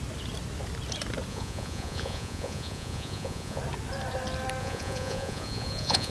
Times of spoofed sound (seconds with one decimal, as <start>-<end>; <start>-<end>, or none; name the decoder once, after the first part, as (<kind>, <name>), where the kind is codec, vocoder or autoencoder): 1.3-3.6 (vocoder, Vocos); 4.6-6.1